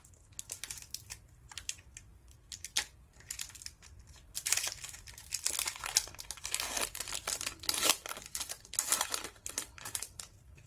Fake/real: real